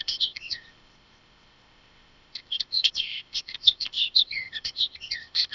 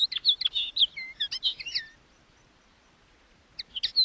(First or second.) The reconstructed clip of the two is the first